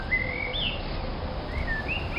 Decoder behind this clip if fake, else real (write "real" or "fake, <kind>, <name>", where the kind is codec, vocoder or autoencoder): real